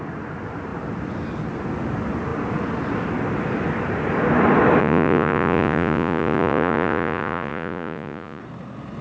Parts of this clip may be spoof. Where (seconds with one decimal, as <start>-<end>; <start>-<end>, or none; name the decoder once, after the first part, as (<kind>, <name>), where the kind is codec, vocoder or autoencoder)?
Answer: 4.8-8.4 (vocoder, Vocos)